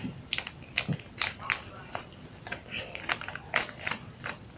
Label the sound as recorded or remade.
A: recorded